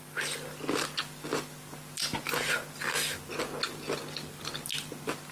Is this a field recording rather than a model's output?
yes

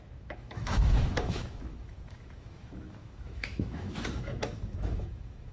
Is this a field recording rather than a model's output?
no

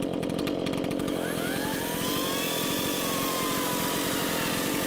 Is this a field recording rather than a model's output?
yes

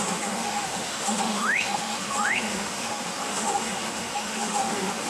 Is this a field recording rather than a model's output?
no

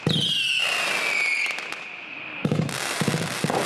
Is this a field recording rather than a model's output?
yes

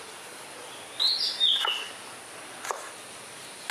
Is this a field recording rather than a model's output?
yes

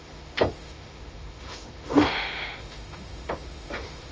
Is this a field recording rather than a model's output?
no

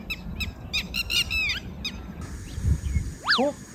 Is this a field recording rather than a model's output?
yes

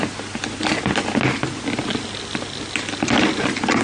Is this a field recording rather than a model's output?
yes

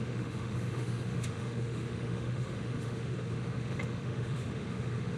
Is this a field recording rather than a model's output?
no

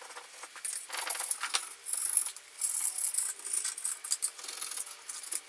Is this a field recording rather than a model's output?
yes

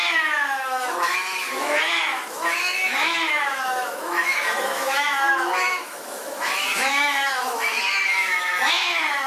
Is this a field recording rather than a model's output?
no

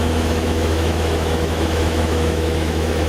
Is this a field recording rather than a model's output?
no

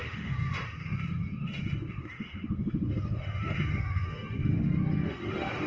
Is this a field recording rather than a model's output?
no